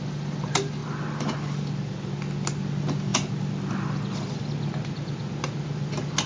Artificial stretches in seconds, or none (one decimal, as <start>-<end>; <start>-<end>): 0.8-2.1; 3.1-4.4

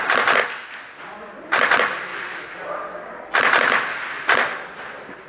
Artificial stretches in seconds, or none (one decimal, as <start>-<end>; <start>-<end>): 2.1-3.7